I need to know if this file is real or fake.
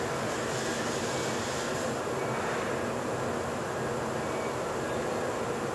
real